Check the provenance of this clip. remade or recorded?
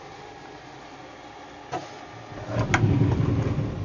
recorded